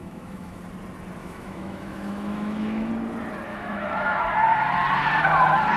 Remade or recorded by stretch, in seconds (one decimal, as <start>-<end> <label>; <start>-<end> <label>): 0.0-0.6 remade; 0.6-1.2 recorded; 1.2-2.9 remade; 2.9-3.5 recorded; 3.5-4.2 remade; 4.2-5.8 recorded